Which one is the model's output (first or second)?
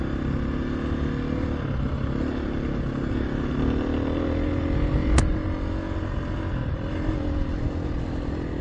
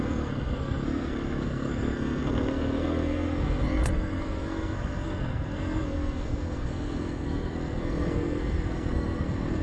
second